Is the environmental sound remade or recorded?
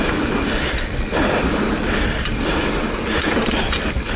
recorded